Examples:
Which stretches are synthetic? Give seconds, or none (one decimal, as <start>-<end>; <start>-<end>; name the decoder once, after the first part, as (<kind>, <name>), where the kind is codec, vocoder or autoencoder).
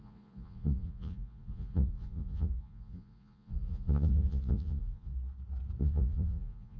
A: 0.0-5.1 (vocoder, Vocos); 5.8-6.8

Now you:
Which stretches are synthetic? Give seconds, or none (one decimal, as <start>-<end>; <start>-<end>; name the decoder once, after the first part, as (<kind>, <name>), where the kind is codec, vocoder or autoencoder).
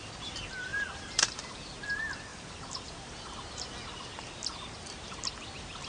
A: 0.7-1.8 (vocoder, BigVGAN v2); 2.3-3.7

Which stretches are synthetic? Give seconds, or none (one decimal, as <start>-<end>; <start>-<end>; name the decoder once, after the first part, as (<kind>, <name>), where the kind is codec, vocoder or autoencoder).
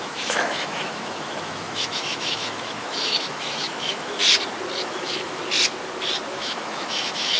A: 0.0-4.2 (autoencoder, DAC-VAE); 4.8-5.4; 6.3-7.4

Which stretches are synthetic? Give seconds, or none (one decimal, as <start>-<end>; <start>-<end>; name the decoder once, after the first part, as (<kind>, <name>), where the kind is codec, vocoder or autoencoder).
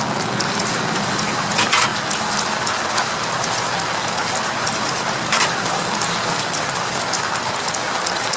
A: none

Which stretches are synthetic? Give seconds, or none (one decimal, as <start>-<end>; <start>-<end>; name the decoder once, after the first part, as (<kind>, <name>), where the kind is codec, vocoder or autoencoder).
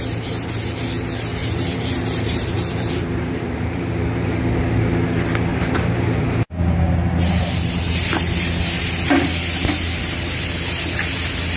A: 1.4-4.4 (vocoder, BigVGAN v2); 5.5-6.7